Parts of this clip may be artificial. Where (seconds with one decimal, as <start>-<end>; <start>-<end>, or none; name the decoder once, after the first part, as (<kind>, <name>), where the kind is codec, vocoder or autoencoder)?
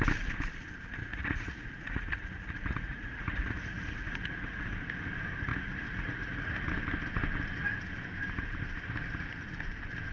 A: 1.0-4.5 (vocoder, Vocos); 5.5-6.7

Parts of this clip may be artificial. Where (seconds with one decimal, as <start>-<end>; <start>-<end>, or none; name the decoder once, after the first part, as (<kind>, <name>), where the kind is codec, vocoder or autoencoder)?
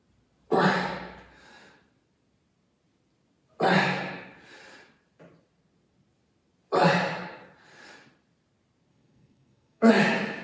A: 8.9-9.9 (codec, SNAC)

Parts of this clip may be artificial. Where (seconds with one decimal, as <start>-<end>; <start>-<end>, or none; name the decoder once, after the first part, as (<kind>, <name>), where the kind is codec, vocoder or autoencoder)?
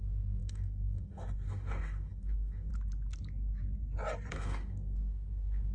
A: 0.0-2.7 (autoencoder, DAC-VAE); 4.3-5.7